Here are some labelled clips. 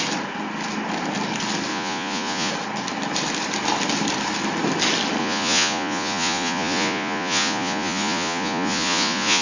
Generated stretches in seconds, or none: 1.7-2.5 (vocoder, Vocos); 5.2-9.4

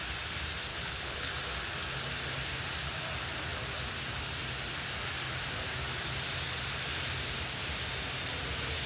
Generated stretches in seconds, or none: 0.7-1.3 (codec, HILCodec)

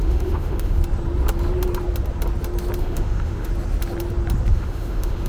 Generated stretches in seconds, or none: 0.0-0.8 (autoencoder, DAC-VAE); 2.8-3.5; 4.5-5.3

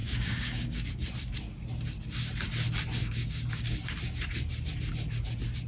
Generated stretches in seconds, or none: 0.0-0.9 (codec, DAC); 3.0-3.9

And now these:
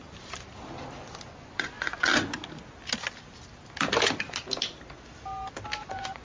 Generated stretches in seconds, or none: 1.3-2.1 (vocoder, Vocos); 5.8-6.2